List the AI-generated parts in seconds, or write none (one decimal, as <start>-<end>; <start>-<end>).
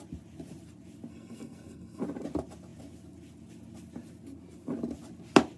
1.1-2.0